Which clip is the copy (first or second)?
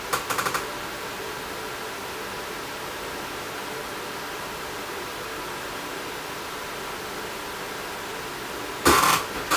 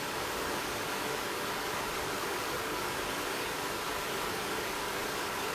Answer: second